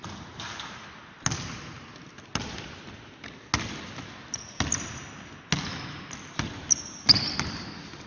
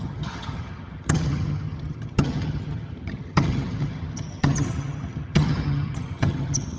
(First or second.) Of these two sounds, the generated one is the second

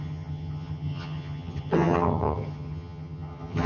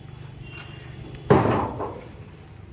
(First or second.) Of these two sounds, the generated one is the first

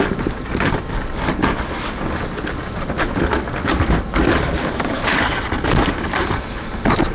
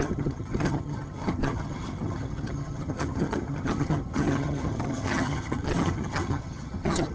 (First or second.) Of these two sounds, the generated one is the second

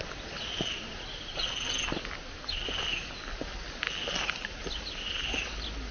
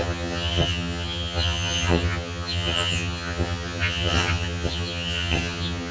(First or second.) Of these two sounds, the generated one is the second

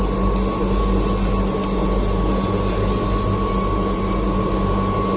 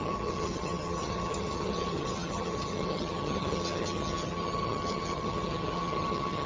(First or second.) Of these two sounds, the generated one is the second